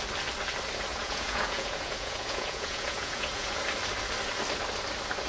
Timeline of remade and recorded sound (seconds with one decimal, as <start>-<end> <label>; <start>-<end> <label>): 0.0-0.9 recorded; 0.9-3.6 remade; 3.6-5.3 recorded